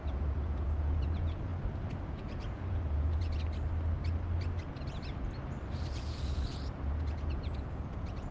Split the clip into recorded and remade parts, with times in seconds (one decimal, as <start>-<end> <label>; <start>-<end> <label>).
0.0-1.5 remade; 1.5-2.1 recorded; 2.1-3.4 remade; 3.4-5.9 recorded; 5.9-8.3 remade